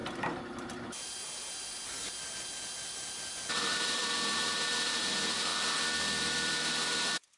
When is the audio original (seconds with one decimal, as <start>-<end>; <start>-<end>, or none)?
0.0-3.6; 5.5-6.2